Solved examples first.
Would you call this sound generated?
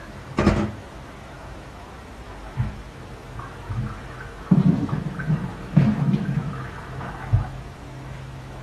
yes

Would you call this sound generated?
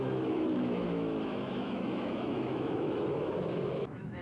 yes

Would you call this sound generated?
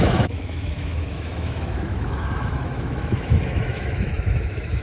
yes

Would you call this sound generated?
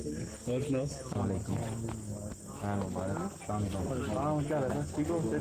no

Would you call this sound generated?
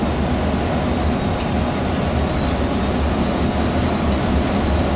no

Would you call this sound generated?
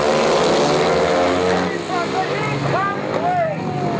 no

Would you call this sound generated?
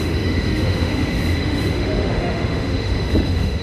yes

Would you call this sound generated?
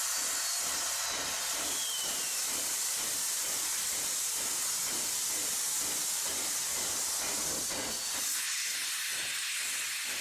no